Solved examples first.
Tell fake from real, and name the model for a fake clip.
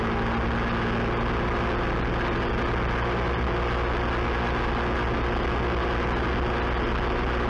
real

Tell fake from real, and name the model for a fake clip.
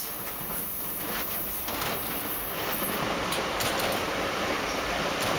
fake, vocoder, BigVGAN v2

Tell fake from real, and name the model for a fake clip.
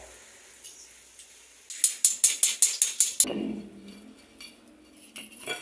real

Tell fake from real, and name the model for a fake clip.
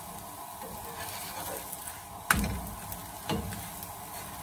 real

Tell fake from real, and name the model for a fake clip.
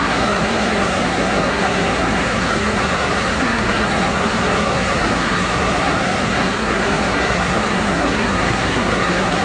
fake, codec, SNAC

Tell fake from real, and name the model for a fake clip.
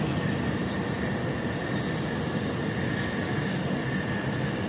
real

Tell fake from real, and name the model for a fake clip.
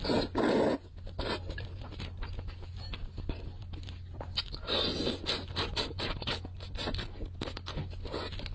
real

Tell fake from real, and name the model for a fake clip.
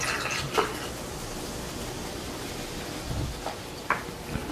real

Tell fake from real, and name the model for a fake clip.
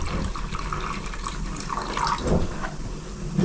real